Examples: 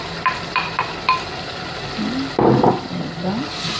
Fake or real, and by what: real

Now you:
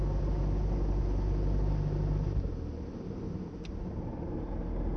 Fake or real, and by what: real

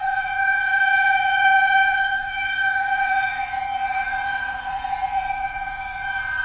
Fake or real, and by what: fake, vocoder, Vocos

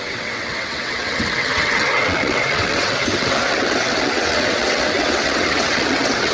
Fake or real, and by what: fake, vocoder, WaveNeXt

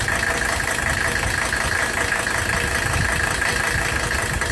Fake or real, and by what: real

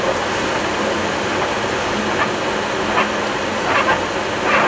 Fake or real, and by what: real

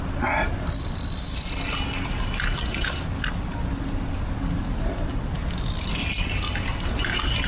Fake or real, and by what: real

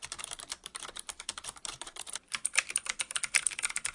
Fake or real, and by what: fake, vocoder, BigVGAN v2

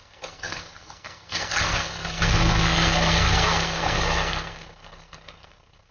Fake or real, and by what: fake, codec, SNAC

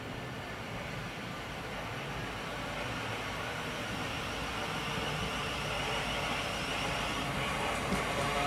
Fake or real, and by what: real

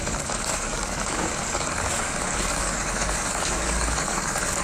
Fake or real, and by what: fake, codec, DAC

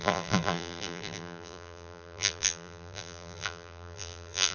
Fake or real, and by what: fake, vocoder, BigVGAN v2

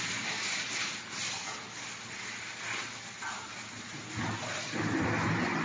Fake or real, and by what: real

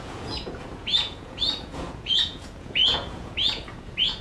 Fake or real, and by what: fake, vocoder, Vocos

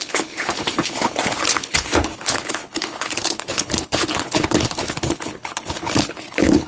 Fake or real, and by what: fake, codec, HILCodec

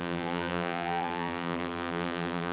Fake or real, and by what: fake, vocoder, BigVGAN v2